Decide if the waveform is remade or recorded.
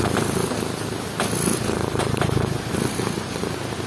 recorded